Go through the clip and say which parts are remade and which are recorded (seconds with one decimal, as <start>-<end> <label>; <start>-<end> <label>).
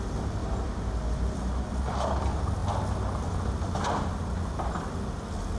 0.0-5.6 recorded